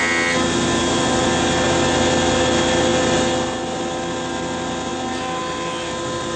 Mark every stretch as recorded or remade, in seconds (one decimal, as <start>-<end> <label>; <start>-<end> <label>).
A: 0.0-6.4 recorded